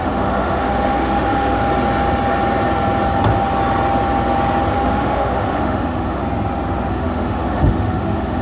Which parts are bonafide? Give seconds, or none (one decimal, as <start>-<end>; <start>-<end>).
1.6-4.7; 6.2-6.9

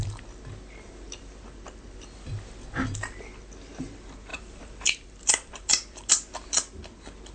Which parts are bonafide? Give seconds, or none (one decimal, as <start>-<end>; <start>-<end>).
0.0-4.3; 6.1-7.3